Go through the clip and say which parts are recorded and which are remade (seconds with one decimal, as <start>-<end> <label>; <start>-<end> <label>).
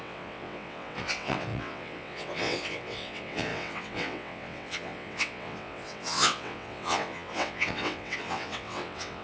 0.0-9.2 remade